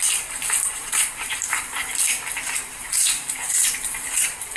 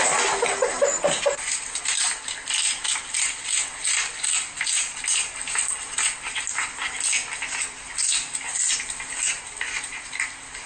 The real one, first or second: second